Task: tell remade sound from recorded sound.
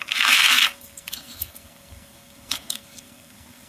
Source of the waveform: remade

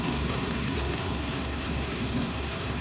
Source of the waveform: remade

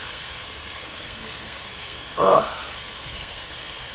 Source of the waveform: remade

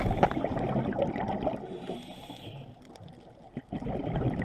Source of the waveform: recorded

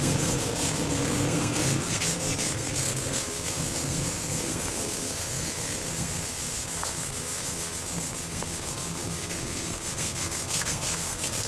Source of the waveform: remade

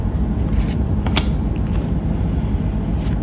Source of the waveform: recorded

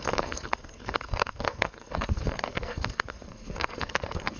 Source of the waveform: remade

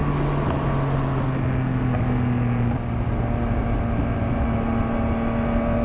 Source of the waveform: recorded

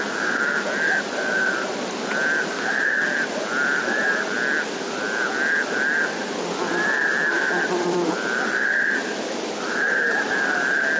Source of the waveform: recorded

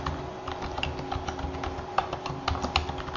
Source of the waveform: recorded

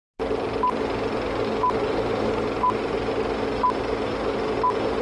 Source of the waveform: recorded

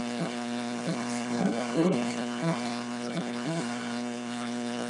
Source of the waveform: remade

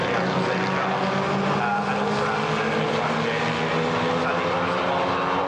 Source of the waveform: recorded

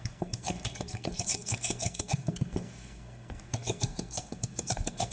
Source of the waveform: remade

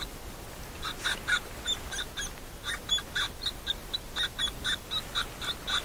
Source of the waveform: recorded